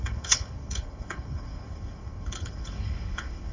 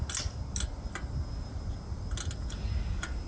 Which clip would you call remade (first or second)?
first